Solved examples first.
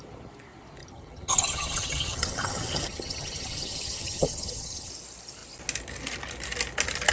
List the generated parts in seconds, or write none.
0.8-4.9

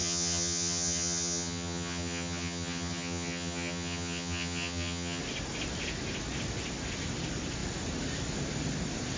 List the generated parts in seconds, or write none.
0.0-5.2

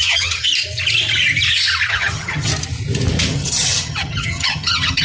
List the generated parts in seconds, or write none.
0.0-0.5; 1.9-2.5; 3.3-5.0

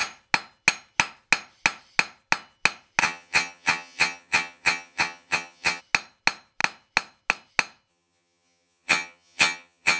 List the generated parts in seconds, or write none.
3.0-5.8; 7.9-10.0

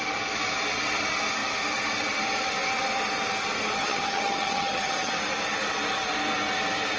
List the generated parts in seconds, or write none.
3.8-5.1